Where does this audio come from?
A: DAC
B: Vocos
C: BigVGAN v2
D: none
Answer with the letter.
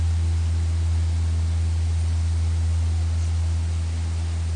D